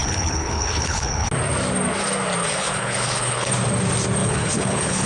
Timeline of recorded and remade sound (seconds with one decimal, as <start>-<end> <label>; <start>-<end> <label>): 0.0-1.3 remade; 1.3-2.4 recorded; 2.4-3.5 remade; 3.5-4.2 recorded; 4.2-5.1 remade